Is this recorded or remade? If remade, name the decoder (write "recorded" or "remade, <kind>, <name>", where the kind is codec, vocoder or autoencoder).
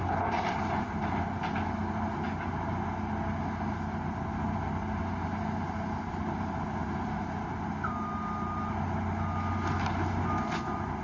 recorded